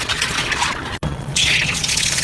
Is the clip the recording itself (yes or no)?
no